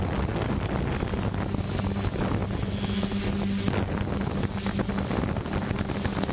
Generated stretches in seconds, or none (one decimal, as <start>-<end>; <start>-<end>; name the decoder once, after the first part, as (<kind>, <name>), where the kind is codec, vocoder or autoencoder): none